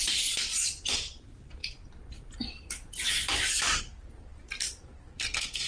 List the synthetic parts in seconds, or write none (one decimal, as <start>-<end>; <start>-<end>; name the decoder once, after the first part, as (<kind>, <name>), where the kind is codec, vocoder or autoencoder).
5.1-5.7 (codec, SNAC)